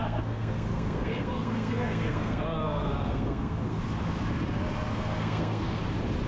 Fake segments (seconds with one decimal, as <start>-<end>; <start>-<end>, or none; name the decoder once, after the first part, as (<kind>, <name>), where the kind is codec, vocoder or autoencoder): 0.0-3.8 (codec, SNAC); 4.9-5.8